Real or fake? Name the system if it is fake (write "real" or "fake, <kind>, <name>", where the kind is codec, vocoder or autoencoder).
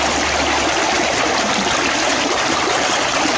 real